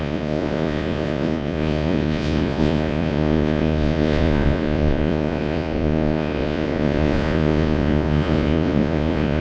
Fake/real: fake